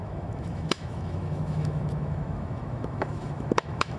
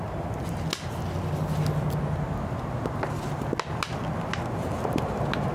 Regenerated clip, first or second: first